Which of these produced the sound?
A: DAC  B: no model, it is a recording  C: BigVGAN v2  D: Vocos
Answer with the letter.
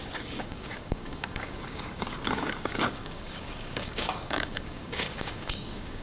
A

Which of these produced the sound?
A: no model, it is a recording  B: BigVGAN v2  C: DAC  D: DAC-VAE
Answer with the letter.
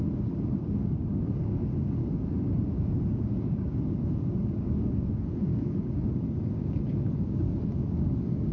C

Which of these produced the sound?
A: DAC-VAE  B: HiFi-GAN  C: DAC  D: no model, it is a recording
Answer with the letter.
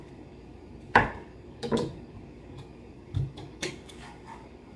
C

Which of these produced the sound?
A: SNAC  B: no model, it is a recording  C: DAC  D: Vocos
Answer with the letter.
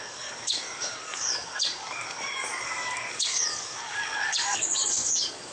C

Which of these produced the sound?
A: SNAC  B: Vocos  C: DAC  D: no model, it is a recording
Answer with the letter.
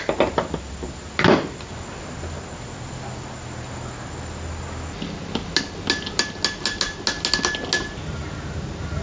D